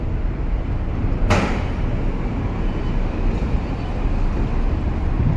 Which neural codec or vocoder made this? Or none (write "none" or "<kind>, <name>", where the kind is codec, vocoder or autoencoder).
none